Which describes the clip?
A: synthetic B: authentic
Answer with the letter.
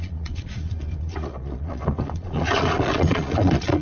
A